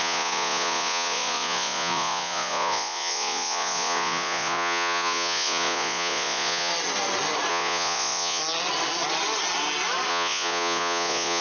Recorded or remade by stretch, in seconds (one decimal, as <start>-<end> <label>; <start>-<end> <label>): 0.0-6.7 remade; 6.7-7.5 recorded; 7.5-8.4 remade; 8.4-10.1 recorded; 10.1-11.4 remade